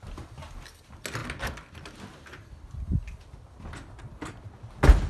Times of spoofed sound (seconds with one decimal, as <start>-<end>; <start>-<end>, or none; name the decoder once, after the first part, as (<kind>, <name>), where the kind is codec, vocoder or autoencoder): none